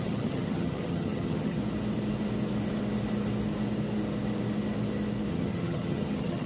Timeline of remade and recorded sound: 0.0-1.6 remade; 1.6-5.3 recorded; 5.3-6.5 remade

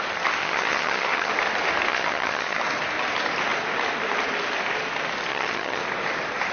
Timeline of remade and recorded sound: 0.0-0.4 recorded; 0.4-1.3 remade; 1.3-1.9 recorded; 1.9-2.6 remade; 2.6-5.3 recorded; 5.3-5.8 remade; 5.8-6.5 recorded